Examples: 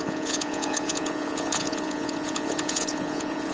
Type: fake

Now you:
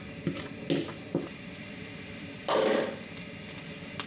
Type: real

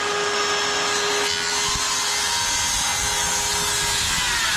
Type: real